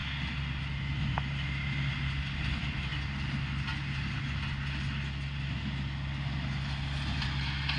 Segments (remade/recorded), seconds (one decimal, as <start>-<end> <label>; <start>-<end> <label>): 0.0-7.8 recorded